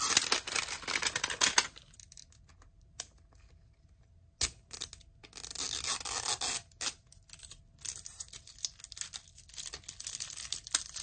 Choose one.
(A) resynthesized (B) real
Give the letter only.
B